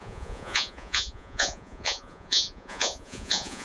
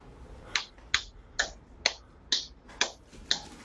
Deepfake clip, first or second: first